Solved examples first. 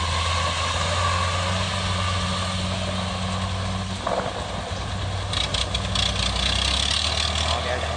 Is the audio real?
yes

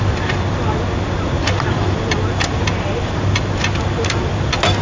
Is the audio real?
yes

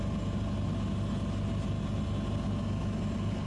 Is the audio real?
yes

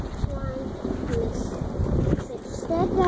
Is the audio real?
yes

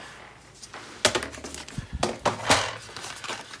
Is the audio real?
yes